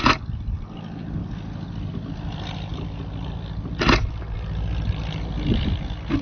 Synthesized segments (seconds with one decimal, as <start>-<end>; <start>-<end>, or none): none